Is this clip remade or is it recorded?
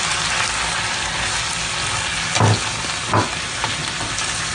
recorded